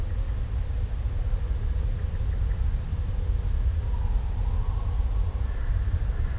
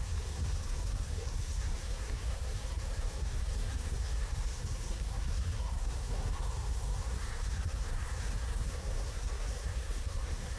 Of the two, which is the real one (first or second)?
first